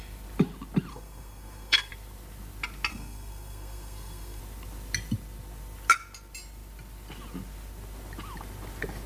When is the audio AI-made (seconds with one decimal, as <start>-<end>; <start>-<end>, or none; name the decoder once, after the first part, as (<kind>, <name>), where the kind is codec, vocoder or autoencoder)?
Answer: 0.9-1.9 (codec, SNAC); 2.9-4.4